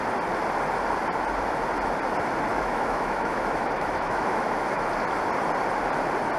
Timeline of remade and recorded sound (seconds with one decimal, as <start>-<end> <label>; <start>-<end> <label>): 0.0-2.5 recorded; 2.5-4.9 remade; 4.9-6.4 recorded